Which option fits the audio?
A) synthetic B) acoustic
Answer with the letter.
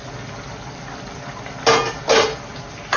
B